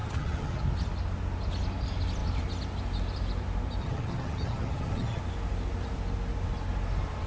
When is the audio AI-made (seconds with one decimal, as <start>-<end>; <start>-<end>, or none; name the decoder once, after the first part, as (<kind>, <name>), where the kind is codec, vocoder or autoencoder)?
0.0-0.6 (vocoder, HiFi-GAN); 3.8-5.2